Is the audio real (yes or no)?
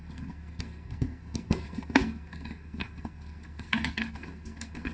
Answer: no